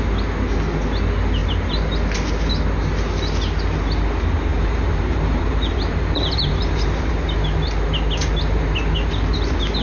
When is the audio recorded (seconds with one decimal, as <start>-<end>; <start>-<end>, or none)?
0.0-4.5; 7.1-9.8